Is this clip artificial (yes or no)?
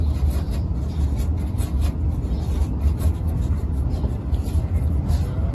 no